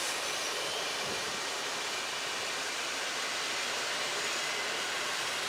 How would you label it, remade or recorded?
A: remade